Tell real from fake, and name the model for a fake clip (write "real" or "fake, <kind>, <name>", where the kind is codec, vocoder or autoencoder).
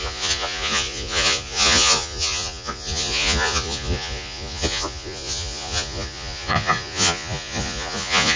fake, vocoder, Vocos